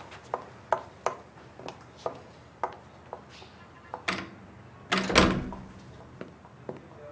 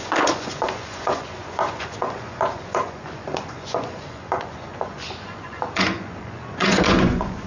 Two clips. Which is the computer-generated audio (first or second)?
second